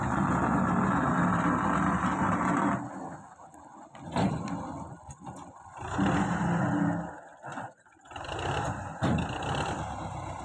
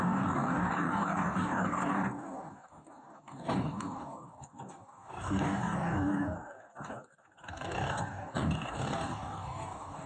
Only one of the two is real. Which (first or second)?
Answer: first